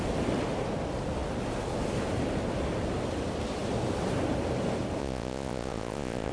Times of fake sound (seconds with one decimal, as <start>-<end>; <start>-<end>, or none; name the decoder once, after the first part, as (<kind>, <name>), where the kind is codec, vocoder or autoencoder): 5.0-6.3 (vocoder, Vocos)